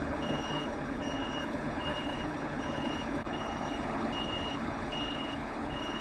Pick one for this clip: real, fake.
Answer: fake